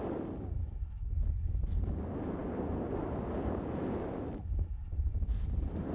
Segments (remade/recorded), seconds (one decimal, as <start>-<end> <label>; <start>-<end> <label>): 0.0-5.9 recorded